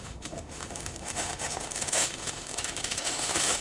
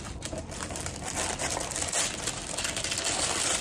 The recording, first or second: second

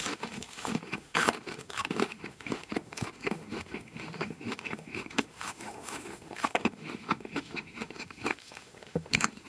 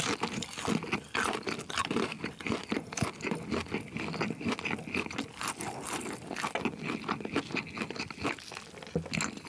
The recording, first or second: second